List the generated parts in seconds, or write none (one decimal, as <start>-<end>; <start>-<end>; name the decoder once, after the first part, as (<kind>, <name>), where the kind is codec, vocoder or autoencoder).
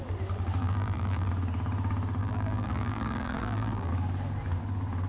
0.6-1.3 (vocoder, BigVGAN v2); 2.2-3.9